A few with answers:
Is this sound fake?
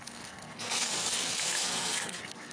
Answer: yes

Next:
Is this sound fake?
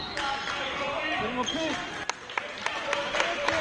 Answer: no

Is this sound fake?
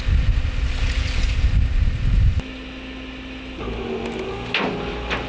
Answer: no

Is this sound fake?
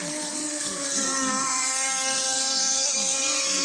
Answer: yes